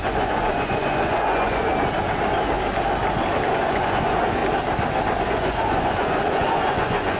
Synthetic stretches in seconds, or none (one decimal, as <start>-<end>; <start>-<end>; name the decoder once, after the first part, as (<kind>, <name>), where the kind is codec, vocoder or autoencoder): 0.0-1.7 (vocoder, Vocos); 3.5-4.4; 5.2-7.2